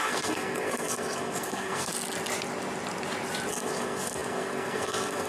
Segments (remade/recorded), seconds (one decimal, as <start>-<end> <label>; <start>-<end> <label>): 0.0-1.9 remade; 1.9-3.5 recorded; 3.5-5.3 remade